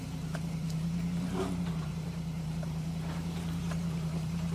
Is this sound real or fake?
fake